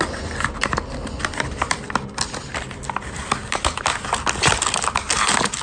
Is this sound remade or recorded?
recorded